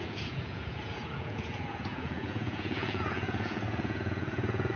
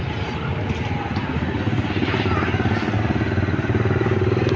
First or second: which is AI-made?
first